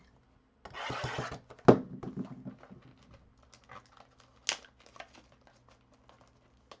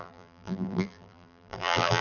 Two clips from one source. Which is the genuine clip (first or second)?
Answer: first